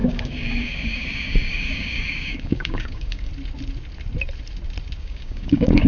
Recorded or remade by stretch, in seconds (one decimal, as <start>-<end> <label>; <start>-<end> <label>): 0.0-3.3 remade; 3.3-5.0 recorded; 5.0-5.9 remade